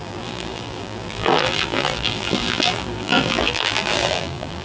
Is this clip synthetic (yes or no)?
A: yes